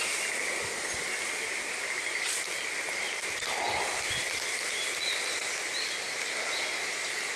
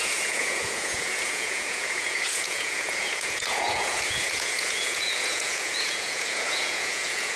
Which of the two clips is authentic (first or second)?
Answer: first